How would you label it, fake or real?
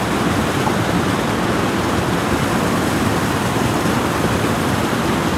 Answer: real